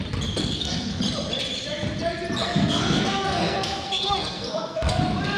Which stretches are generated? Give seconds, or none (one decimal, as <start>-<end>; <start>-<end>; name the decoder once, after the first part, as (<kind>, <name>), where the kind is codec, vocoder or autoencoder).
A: 0.4-1.0 (codec, SNAC); 2.4-5.0